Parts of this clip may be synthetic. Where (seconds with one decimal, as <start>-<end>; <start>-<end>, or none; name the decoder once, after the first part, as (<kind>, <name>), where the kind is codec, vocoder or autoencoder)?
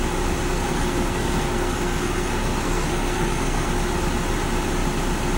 0.5-3.7 (codec, SNAC)